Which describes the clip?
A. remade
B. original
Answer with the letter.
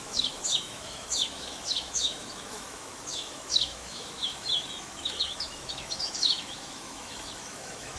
A